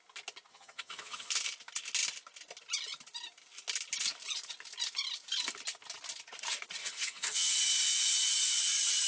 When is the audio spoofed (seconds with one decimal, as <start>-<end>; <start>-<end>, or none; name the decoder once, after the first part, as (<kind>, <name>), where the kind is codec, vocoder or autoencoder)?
0.5-1.3 (vocoder, HiFi-GAN); 6.8-7.6